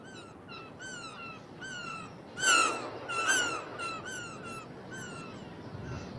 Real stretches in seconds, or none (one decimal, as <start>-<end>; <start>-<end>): 0.0-6.2